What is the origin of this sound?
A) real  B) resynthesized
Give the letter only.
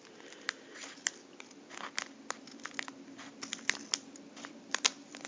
A